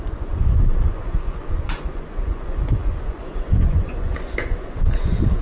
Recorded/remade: remade